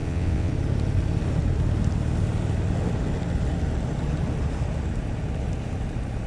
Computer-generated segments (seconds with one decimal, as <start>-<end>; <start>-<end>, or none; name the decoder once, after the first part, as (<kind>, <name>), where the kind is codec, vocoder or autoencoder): 0.0-0.5 (vocoder, WaveNeXt)

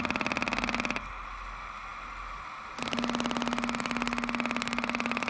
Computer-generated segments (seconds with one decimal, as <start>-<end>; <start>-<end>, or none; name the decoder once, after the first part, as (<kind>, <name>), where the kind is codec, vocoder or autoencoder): none

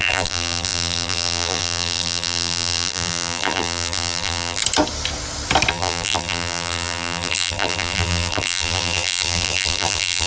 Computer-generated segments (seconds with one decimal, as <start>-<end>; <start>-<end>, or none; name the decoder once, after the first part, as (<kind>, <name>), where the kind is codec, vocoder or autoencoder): 0.0-4.6 (vocoder, BigVGAN v2); 5.7-10.3

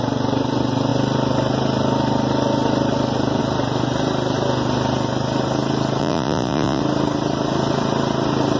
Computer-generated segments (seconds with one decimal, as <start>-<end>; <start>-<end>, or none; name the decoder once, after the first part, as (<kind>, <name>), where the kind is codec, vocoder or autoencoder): 6.0-6.8 (vocoder, Vocos)

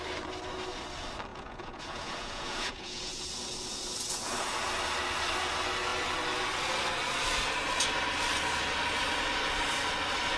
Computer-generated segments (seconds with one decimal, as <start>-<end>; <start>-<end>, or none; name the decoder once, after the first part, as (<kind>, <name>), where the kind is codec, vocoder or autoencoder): 1.3-3.2 (vocoder, Vocos)

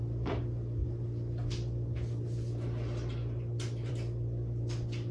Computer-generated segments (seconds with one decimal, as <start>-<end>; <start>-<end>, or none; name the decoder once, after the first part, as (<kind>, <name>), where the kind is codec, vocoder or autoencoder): none

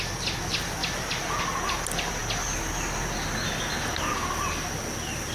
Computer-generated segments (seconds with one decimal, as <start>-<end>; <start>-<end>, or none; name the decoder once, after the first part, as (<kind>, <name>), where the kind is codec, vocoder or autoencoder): none